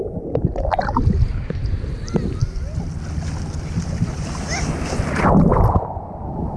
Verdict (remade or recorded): recorded